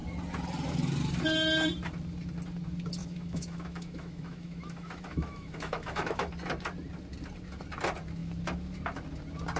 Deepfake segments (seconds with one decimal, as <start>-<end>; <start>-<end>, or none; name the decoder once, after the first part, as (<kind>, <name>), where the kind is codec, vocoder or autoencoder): 3.0-6.3 (autoencoder, DAC-VAE)